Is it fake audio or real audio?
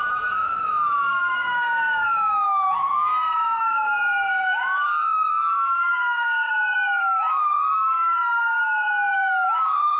fake